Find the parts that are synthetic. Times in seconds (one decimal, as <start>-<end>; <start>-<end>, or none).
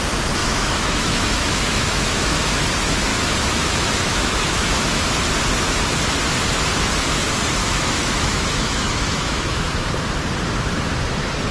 0.4-2.7; 3.1-5.0; 7.6-9.7